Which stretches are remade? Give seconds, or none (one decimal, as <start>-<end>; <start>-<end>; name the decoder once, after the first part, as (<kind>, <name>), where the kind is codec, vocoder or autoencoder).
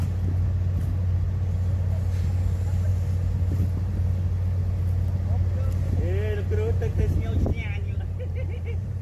7.8-9.0 (vocoder, BigVGAN v2)